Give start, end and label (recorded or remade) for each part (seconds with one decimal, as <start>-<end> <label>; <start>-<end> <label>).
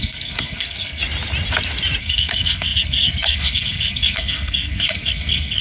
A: 0.0-1.0 remade; 1.0-2.0 recorded; 2.0-5.6 remade